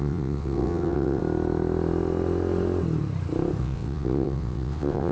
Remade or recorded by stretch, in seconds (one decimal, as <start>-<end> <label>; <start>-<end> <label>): 0.0-1.2 remade; 1.2-3.6 recorded; 3.6-5.1 remade